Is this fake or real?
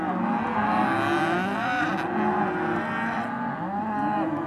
real